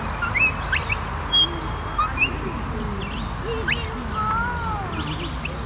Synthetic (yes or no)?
no